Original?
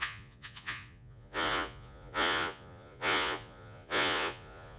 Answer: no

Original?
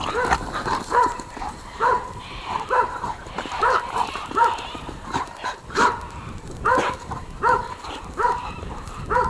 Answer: no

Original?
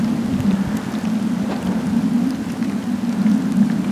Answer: yes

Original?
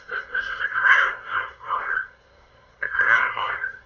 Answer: no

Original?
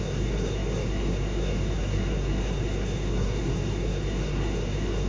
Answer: no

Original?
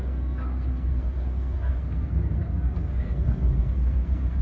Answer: no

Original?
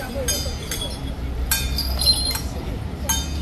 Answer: yes